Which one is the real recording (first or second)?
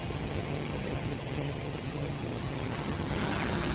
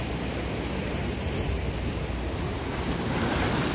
second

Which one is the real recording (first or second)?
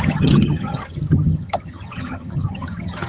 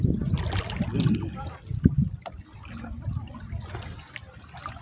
second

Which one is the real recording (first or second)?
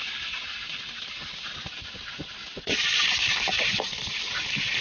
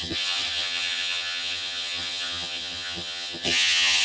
first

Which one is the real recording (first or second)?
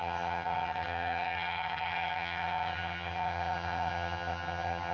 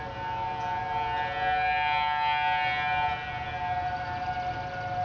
second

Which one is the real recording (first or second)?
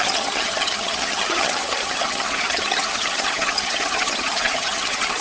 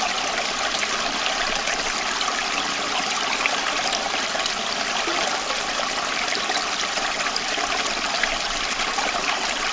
second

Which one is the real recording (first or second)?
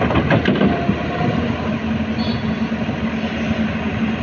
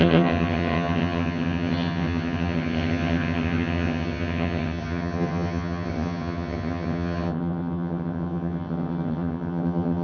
first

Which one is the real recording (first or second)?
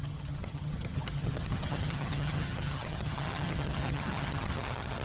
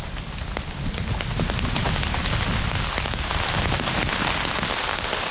second